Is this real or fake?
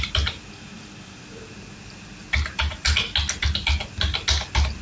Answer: real